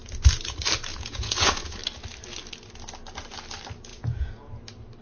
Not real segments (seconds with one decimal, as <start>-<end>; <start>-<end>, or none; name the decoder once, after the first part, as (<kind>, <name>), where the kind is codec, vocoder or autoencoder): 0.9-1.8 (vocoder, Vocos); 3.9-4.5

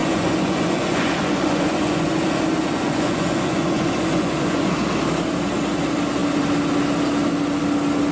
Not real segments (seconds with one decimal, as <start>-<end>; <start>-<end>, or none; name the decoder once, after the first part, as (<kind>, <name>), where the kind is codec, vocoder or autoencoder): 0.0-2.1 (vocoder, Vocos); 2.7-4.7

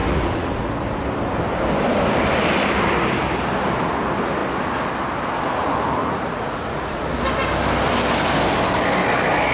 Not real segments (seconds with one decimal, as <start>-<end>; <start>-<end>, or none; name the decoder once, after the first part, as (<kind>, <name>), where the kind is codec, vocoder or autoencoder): 0.0-0.7 (vocoder, Vocos); 6.0-7.1

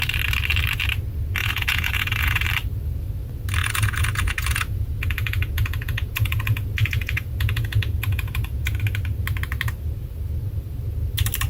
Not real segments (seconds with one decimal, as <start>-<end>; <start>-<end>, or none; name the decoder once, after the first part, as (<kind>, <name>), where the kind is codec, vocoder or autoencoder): 1.4-2.4 (vocoder, Vocos); 3.6-8.8

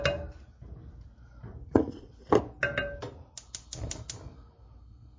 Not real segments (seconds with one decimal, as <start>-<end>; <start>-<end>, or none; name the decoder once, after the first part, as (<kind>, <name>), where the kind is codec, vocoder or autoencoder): 1.5-2.1 (vocoder, Vocos)